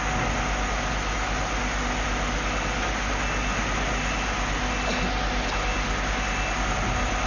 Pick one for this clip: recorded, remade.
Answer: recorded